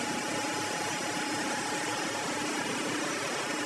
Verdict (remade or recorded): recorded